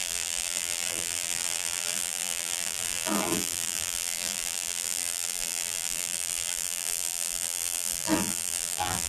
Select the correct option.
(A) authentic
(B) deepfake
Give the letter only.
B